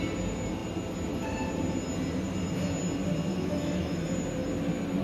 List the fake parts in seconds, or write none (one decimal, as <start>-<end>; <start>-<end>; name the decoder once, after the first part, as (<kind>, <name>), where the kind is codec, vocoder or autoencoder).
3.3-4.0 (autoencoder, DAC-VAE)